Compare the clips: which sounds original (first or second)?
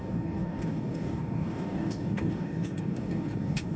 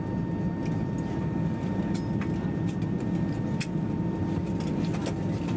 second